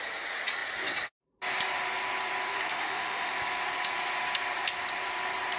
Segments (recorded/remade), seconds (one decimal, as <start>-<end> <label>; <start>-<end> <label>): 0.0-2.5 recorded; 2.5-3.3 remade; 3.3-5.6 recorded